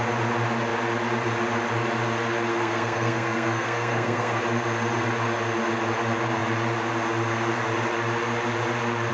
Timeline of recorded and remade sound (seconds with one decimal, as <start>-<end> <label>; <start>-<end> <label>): 0.0-2.5 recorded; 2.5-4.4 remade; 4.4-9.1 recorded